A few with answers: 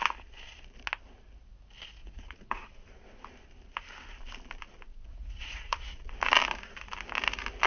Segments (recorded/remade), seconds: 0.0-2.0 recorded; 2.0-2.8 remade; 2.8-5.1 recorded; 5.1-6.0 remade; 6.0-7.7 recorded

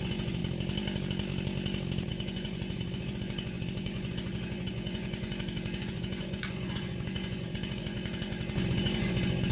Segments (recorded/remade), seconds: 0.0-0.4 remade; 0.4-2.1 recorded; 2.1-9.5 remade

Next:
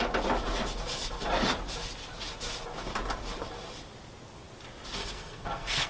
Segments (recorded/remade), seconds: 0.0-5.0 recorded; 5.0-5.9 remade